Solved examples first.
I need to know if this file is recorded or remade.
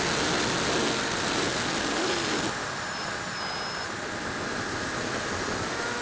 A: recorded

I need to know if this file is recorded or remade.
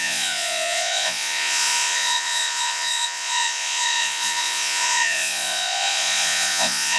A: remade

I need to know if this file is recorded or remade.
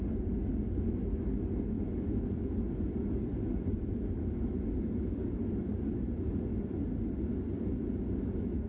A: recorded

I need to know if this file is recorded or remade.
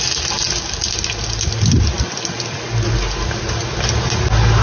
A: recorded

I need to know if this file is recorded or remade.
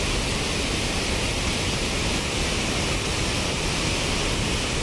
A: recorded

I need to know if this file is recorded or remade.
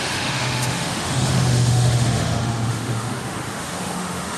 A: remade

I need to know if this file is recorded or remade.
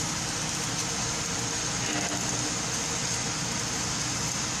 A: recorded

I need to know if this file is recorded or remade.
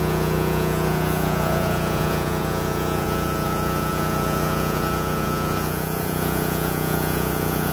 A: remade